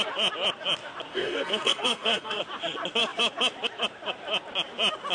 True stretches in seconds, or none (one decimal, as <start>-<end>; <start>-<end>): 0.0-1.1; 2.4-5.1

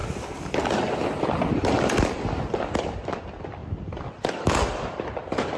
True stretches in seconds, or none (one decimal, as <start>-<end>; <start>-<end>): 0.0-5.6

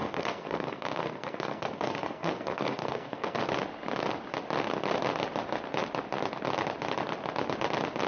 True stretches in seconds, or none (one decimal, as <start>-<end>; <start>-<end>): 3.4-8.1